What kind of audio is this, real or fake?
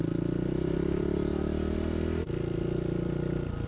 real